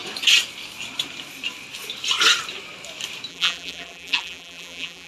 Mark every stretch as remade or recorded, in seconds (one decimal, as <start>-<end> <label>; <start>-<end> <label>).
0.0-3.3 recorded; 3.3-5.1 remade